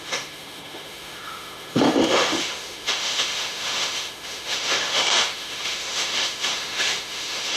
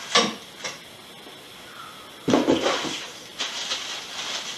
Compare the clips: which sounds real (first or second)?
second